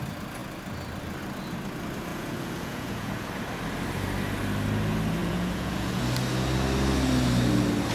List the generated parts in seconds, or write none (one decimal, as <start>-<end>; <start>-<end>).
2.1-3.3; 5.2-6.0